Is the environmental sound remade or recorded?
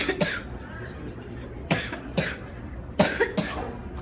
recorded